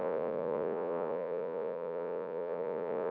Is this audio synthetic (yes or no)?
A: yes